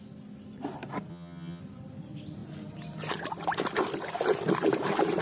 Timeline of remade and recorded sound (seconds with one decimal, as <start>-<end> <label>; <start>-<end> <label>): 0.0-1.1 recorded; 1.1-1.6 remade; 1.6-5.2 recorded